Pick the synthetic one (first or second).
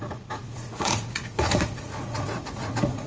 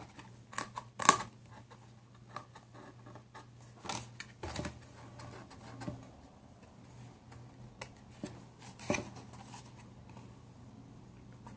first